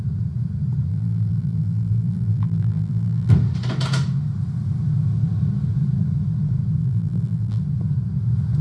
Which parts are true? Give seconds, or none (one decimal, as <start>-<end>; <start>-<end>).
0.0-0.9; 3.3-6.8; 7.6-8.6